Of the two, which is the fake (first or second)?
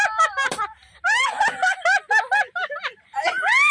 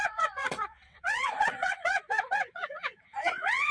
second